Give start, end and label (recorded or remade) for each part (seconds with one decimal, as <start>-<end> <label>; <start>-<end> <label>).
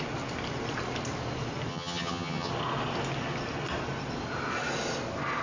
0.0-1.7 recorded; 1.7-2.5 remade; 2.5-5.4 recorded